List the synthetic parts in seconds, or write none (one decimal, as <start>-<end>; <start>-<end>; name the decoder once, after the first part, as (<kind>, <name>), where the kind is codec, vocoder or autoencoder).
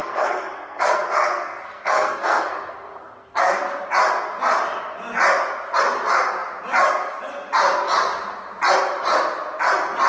0.0-3.6 (codec, SNAC)